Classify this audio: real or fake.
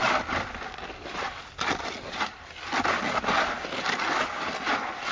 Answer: real